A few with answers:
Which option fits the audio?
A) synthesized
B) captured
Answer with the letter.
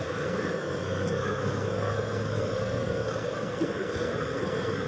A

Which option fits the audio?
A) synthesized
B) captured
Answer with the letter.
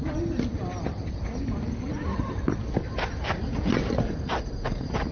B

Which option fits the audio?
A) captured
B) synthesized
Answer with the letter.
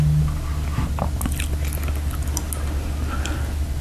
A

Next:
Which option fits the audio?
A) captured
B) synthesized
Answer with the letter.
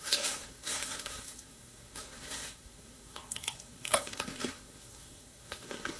B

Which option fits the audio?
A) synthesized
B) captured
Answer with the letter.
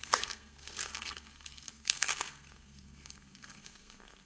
A